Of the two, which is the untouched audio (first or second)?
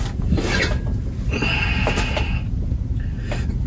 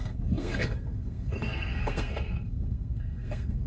first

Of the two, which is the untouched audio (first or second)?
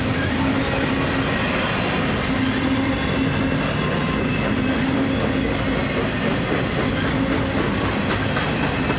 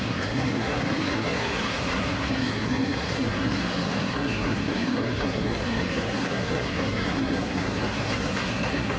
first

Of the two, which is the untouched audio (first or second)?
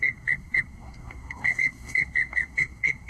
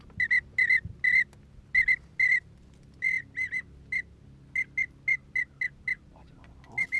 second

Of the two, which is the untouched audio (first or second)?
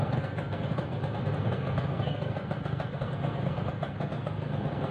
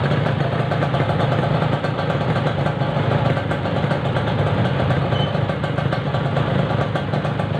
second